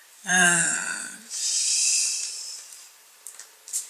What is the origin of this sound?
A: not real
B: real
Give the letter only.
A